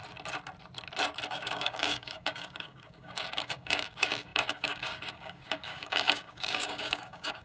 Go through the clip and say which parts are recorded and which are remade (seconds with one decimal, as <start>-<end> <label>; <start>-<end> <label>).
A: 0.0-1.3 recorded; 1.3-7.4 remade